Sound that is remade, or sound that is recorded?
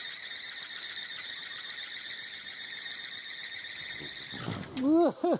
recorded